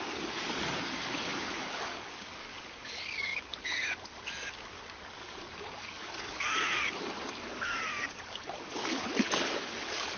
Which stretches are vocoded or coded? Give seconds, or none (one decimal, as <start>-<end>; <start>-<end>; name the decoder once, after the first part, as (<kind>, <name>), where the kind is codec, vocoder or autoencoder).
0.0-10.2 (codec, DAC)